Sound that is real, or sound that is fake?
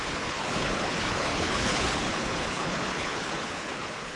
fake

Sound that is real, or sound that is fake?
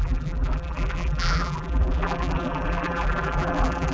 fake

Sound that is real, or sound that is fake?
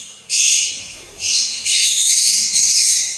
fake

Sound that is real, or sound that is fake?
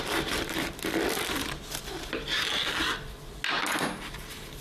real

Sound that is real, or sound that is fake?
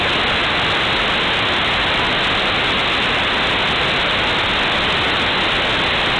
real